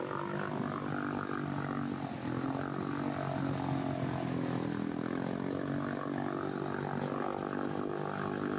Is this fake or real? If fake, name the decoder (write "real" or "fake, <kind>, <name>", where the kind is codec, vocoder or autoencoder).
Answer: real